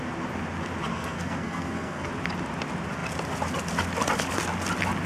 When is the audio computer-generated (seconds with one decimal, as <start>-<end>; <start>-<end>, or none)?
0.9-2.1